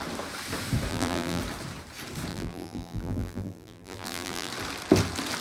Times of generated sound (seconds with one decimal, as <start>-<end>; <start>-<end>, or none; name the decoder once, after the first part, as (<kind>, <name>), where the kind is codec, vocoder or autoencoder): 0.9-1.4 (vocoder, BigVGAN v2); 2.3-4.5